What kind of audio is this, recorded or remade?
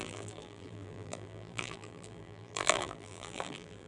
remade